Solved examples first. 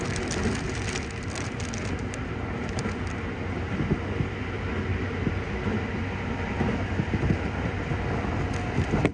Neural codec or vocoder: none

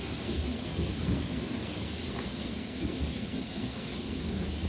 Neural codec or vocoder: codec, SNAC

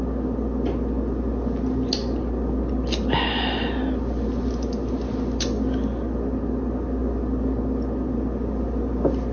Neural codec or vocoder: none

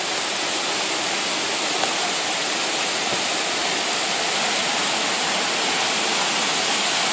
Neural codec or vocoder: none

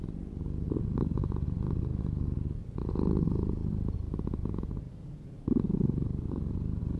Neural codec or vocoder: none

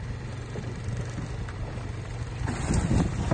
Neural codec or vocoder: none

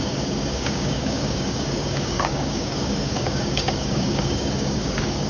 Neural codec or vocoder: codec, DAC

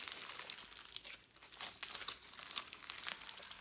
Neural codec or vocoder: none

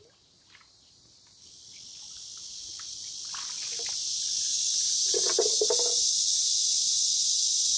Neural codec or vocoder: none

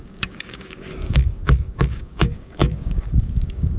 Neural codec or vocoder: codec, DAC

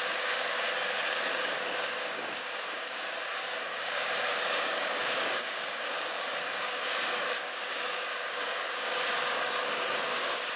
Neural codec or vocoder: codec, DAC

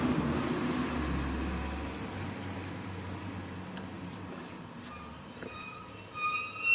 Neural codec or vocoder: none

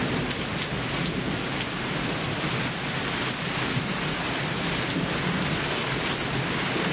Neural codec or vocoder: vocoder, BigVGAN v2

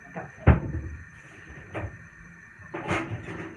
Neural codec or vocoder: vocoder, BigVGAN v2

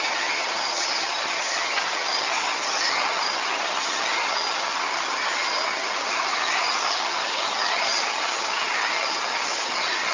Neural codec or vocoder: vocoder, HiFi-GAN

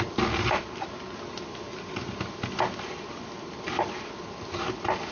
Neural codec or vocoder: none